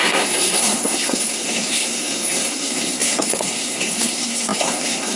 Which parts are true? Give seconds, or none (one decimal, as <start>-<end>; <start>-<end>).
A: none